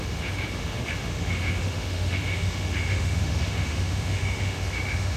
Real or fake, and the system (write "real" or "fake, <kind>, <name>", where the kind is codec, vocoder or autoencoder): fake, autoencoder, DAC-VAE